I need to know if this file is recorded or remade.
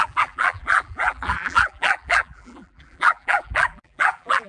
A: remade